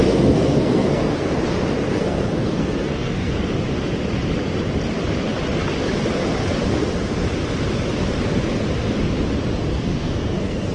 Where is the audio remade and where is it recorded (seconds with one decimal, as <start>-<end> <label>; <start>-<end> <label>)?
0.0-1.3 remade; 1.3-1.9 recorded; 1.9-3.3 remade; 3.3-9.7 recorded; 9.7-10.7 remade